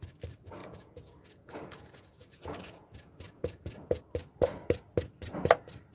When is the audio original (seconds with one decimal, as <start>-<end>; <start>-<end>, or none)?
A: 0.0-0.6; 4.0-5.9